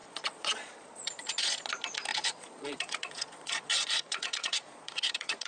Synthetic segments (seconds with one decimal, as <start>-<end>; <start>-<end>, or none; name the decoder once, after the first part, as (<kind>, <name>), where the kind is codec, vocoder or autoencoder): 0.0-1.7 (vocoder, Vocos); 2.1-5.5